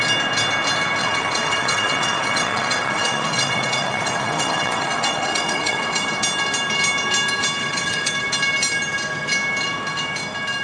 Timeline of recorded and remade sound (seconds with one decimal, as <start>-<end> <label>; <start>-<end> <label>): 0.0-1.0 recorded; 1.0-6.0 remade; 6.0-7.6 recorded; 7.6-8.1 remade; 8.1-10.6 recorded